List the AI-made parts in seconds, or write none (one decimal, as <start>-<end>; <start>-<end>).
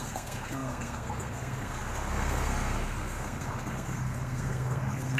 0.0-5.2